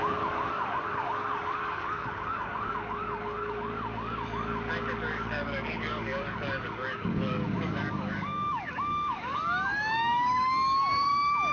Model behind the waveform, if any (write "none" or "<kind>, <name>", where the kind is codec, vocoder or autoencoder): codec, DAC